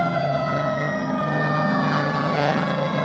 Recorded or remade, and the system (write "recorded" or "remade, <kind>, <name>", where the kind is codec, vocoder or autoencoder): remade, vocoder, HiFi-GAN